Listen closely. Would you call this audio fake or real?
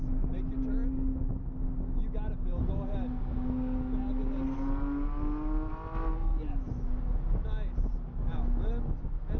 real